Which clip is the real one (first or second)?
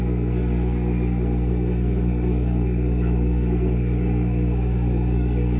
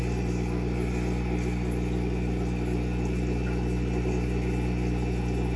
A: second